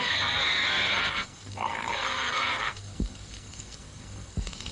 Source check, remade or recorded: remade